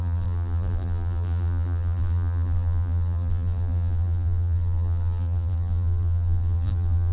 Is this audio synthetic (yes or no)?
yes